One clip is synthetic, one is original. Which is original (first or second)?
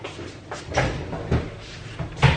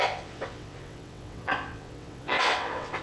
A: first